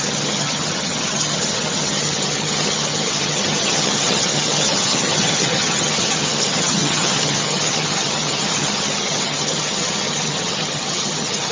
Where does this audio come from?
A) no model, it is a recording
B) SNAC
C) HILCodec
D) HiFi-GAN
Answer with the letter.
D